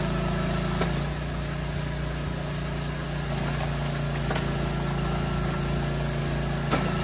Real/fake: real